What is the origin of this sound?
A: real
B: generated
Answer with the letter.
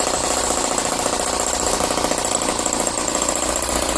A